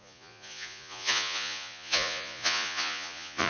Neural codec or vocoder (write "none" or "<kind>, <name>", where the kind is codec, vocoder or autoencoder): vocoder, Vocos